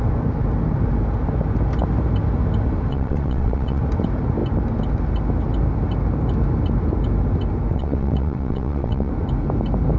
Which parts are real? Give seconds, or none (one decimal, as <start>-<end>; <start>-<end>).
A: 0.0-2.9; 3.8-7.7; 9.1-10.0